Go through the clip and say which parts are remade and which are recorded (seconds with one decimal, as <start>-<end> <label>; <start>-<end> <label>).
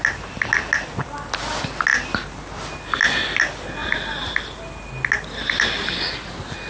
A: 0.0-6.7 recorded